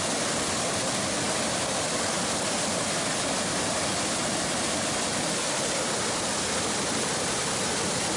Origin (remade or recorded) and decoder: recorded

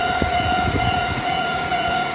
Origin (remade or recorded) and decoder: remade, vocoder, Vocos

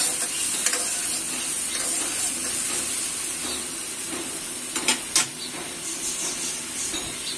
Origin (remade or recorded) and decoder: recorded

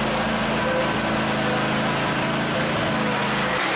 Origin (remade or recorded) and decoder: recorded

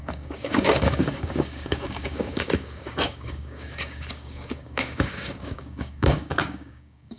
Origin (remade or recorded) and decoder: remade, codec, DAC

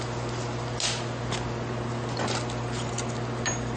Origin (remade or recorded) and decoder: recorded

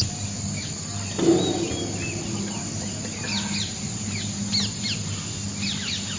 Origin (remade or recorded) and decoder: recorded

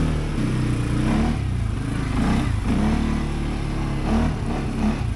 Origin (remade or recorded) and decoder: recorded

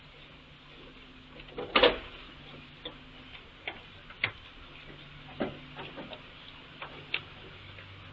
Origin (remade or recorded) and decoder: recorded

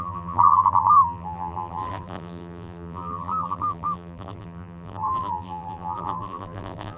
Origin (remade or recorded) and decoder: remade, vocoder, BigVGAN v2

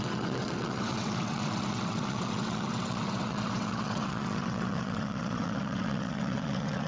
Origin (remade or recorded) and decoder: remade, vocoder, WaveNeXt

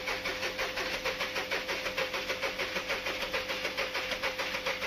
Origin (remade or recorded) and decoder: recorded